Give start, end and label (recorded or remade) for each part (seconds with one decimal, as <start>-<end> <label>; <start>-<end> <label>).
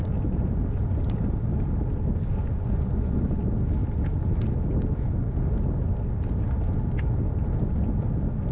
0.0-2.5 recorded; 2.5-3.4 remade; 3.4-8.5 recorded